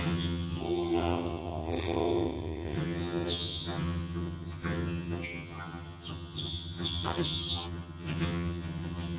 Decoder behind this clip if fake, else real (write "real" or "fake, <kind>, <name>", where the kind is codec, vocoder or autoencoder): fake, vocoder, HiFi-GAN